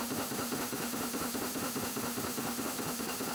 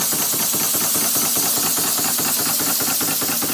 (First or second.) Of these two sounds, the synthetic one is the first